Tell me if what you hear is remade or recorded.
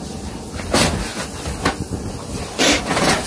recorded